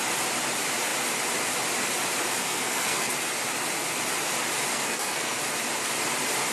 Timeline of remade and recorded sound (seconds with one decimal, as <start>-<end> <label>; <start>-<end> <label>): 0.0-2.4 recorded; 2.4-3.1 remade; 3.1-4.7 recorded; 4.7-5.4 remade; 5.4-6.5 recorded